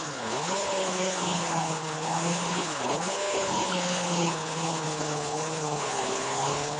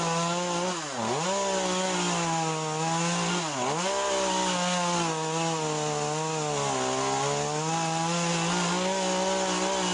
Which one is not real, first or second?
first